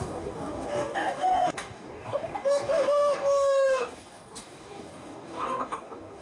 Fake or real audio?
fake